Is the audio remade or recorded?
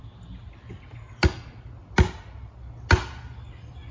recorded